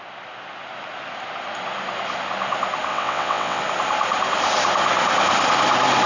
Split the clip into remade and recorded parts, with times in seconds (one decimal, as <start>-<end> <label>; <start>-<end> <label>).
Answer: 0.0-2.9 recorded; 2.9-3.6 remade; 3.6-6.1 recorded